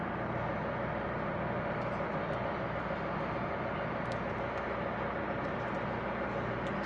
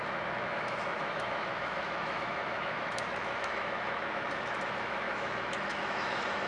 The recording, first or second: first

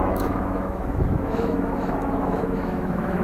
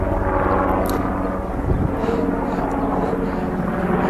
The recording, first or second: second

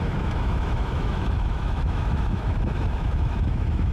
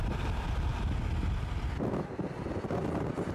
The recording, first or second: second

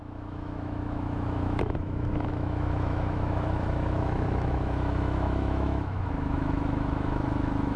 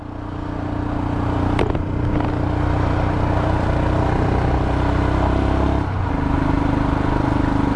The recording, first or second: second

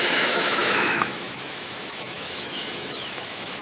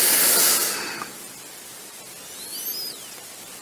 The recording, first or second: second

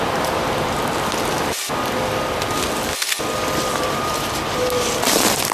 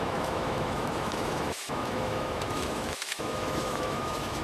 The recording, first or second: first